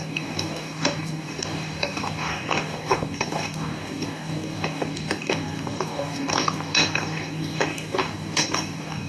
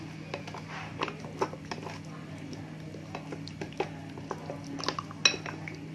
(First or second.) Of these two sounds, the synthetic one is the first